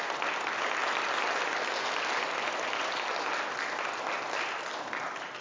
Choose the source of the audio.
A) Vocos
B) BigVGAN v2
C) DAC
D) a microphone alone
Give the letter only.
D